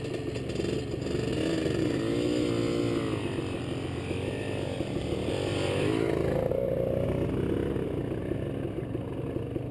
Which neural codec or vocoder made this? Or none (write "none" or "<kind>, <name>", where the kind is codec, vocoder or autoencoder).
none